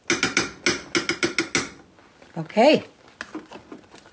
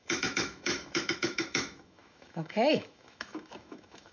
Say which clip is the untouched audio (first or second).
first